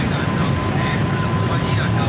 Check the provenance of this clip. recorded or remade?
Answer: recorded